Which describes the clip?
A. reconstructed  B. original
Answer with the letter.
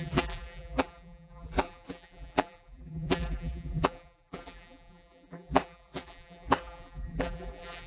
A